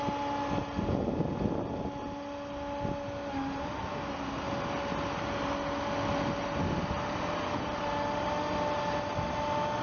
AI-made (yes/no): no